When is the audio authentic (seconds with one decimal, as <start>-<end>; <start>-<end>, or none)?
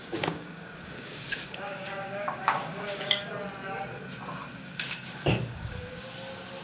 3.3-4.6; 5.8-6.6